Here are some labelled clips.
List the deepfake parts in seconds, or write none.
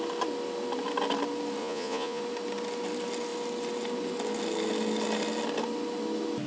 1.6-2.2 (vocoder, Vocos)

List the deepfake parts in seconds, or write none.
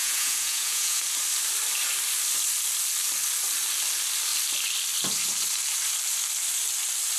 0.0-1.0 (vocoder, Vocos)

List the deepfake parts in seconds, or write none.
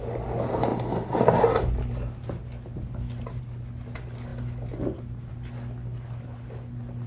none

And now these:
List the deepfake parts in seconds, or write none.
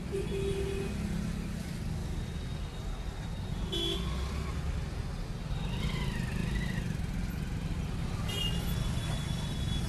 none